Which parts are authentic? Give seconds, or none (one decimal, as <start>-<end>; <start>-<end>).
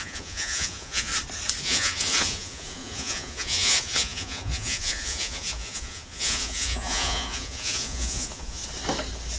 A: 1.1-1.6; 8.6-9.4